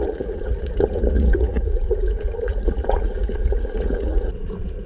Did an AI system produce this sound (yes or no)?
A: yes